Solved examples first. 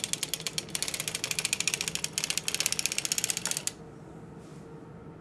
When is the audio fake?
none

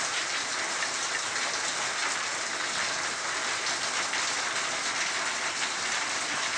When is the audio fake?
none

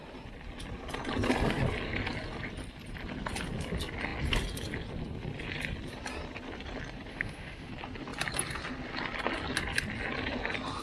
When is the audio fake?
7.1-7.7

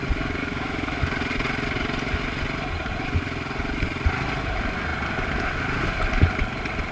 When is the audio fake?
0.4-1.0